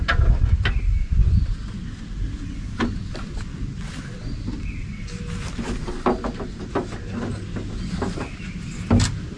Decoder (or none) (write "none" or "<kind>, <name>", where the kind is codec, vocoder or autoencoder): none